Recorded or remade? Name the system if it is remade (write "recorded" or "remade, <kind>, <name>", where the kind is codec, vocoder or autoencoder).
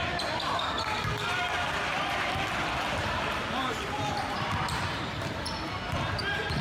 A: remade, vocoder, BigVGAN v2